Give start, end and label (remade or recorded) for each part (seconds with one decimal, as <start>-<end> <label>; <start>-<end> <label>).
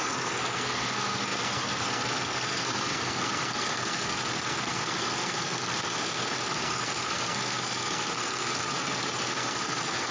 0.0-10.1 remade